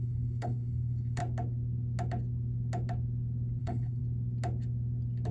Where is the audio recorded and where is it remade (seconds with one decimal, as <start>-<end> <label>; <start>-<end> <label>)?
0.0-1.2 remade; 1.2-3.6 recorded; 3.6-4.0 remade; 4.0-5.3 recorded

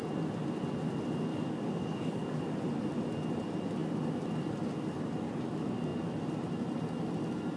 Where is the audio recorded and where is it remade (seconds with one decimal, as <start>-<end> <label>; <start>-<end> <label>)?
0.0-1.3 recorded; 1.3-2.4 remade; 2.4-7.6 recorded

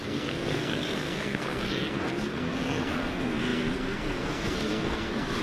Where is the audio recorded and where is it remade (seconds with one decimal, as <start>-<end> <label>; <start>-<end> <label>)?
0.0-5.4 remade

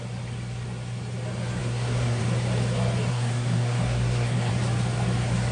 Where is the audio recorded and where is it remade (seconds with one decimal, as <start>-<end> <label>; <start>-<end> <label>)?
0.0-1.6 recorded; 1.6-2.2 remade; 2.2-3.1 recorded; 3.1-4.5 remade; 4.5-5.5 recorded

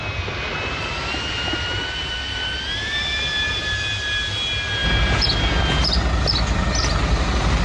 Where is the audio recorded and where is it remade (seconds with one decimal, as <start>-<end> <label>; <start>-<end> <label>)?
0.0-7.6 recorded

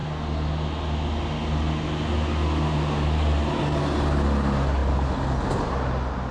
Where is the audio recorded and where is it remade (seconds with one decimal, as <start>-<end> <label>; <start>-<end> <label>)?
0.0-6.3 recorded

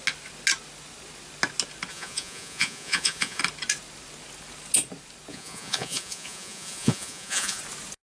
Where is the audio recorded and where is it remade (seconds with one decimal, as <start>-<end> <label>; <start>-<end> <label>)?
0.0-1.9 recorded; 1.9-3.4 remade; 3.4-5.3 recorded; 5.3-7.6 remade; 7.6-8.1 recorded

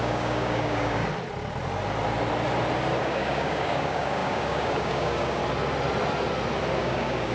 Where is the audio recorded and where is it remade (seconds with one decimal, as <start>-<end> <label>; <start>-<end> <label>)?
0.0-1.0 remade; 1.0-3.0 recorded; 3.0-5.4 remade; 5.4-6.8 recorded; 6.8-7.3 remade